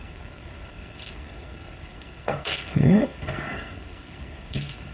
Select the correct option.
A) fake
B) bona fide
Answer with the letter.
A